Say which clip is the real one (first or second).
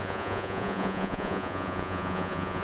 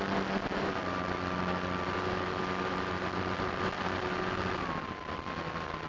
second